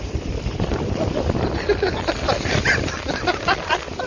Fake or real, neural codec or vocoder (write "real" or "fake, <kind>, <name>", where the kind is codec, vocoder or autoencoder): real